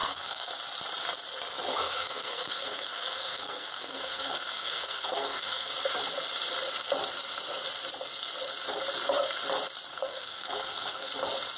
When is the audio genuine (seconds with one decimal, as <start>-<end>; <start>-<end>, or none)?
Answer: 0.5-1.7; 5.7-9.9; 11.1-11.6